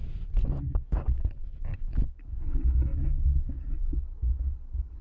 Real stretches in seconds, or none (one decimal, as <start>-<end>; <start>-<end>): 0.0-2.2; 2.9-3.8